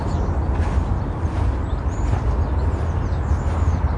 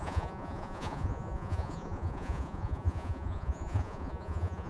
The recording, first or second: first